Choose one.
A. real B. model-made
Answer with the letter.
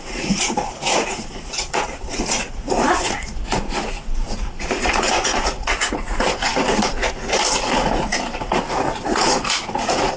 B